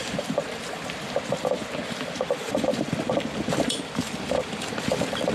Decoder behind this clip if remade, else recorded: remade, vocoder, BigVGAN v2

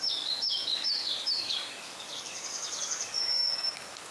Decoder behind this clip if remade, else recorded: remade, codec, DAC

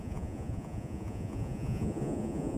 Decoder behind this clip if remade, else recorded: remade, vocoder, Vocos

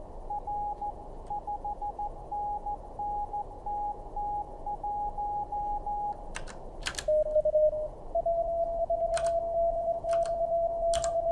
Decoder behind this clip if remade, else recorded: recorded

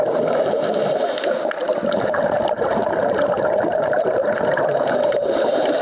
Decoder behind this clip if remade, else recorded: remade, vocoder, BigVGAN v2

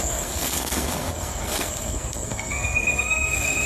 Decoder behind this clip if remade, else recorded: remade, codec, SNAC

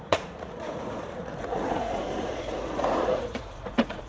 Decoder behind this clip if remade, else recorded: remade, vocoder, Vocos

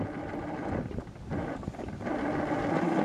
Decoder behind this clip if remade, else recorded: recorded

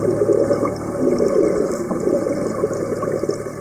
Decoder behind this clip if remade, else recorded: recorded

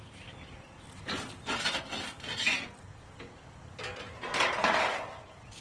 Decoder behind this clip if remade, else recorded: recorded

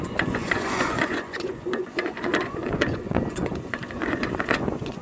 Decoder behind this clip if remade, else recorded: remade, vocoder, Vocos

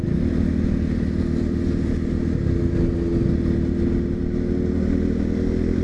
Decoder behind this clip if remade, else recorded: recorded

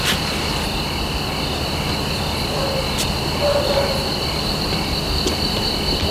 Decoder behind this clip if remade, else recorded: recorded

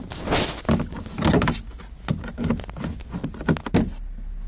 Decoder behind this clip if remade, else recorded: recorded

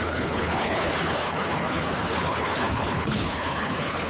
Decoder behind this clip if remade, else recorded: remade, codec, HILCodec